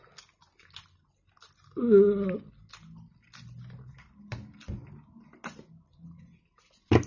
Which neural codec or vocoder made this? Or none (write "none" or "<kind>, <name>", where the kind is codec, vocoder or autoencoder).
none